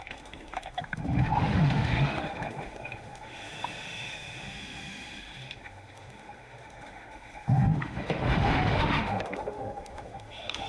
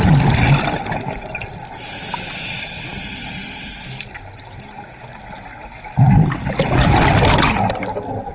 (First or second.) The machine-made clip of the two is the first